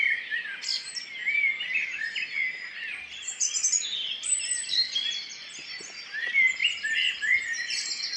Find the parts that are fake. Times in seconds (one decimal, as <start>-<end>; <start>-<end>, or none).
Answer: none